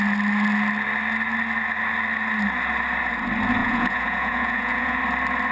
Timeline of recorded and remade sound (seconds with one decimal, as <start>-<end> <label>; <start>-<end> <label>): 0.0-3.6 recorded; 3.6-5.0 remade; 5.0-5.5 recorded